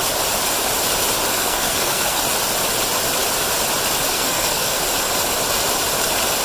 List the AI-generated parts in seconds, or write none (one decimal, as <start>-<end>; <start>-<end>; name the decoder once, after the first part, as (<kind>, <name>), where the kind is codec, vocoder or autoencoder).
1.3-2.2 (codec, SNAC); 4.1-4.8